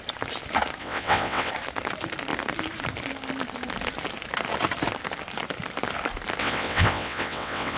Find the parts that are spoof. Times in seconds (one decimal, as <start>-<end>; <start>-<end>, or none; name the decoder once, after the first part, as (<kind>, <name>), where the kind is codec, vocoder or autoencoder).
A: 0.8-1.5 (vocoder, WaveNeXt); 6.4-7.8

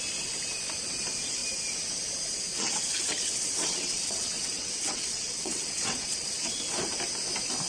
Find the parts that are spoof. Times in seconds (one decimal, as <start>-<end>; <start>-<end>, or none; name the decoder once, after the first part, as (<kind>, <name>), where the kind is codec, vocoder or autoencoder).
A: 2.5-6.5 (vocoder, WaveNeXt)

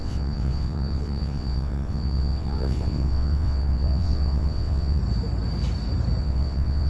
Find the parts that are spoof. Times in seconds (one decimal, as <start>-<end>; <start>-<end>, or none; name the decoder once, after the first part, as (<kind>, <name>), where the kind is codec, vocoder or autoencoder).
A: 0.0-5.0 (vocoder, WaveNeXt); 6.2-6.9

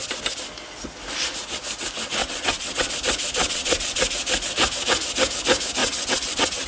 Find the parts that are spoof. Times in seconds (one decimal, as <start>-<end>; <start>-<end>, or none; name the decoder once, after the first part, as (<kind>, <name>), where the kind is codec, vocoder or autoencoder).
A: 2.2-2.9 (vocoder, WaveNeXt); 3.4-4.0; 5.8-6.7

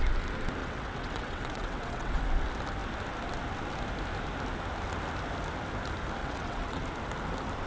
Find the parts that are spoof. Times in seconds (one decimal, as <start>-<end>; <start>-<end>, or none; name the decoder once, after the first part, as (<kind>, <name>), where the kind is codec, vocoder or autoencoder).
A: 0.6-2.2 (vocoder, WaveNeXt); 6.2-6.8

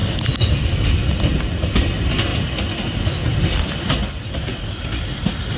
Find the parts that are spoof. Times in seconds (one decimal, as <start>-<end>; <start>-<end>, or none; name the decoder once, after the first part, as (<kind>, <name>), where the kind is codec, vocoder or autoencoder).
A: none

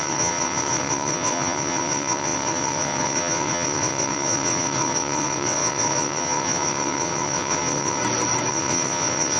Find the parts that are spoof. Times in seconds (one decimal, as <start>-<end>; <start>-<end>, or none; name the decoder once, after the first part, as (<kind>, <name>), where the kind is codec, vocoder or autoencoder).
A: 0.0-8.0 (vocoder, WaveNeXt); 8.5-9.4

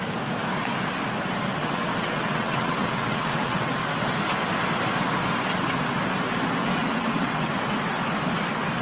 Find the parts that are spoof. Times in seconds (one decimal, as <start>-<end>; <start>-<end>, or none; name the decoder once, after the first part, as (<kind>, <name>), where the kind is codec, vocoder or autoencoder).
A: 1.6-3.7 (vocoder, WaveNeXt); 6.8-7.5